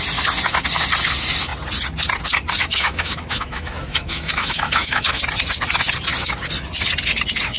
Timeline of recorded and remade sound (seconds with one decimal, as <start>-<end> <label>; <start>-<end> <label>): 0.0-2.6 recorded; 2.6-5.2 remade; 5.2-7.6 recorded